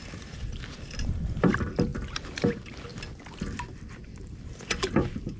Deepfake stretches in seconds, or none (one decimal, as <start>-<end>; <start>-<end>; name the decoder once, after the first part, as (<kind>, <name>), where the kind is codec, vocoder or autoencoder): 0.0-1.9 (vocoder, BigVGAN v2); 2.5-2.9; 3.9-5.4